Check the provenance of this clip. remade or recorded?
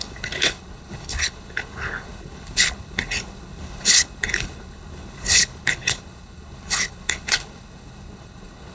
remade